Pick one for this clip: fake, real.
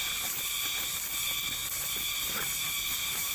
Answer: real